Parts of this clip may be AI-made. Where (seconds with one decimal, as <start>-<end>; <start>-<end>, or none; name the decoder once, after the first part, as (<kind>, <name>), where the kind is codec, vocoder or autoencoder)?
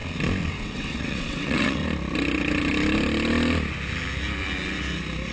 0.5-1.8 (vocoder, WaveNeXt)